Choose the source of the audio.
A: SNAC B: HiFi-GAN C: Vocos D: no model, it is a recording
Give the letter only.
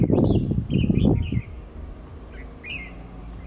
D